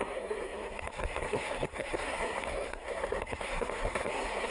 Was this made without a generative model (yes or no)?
no